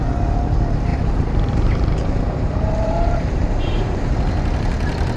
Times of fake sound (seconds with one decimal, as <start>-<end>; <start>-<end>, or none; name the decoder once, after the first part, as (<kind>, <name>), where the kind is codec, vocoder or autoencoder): 0.9-4.0 (vocoder, BigVGAN v2)